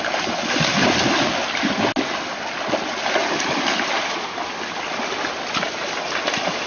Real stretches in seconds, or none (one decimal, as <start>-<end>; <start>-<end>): 0.0-6.7